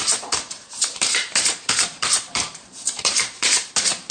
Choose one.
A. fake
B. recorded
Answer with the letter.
A